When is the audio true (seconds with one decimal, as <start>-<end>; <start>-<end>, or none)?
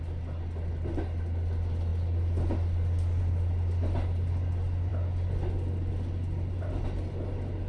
0.0-7.7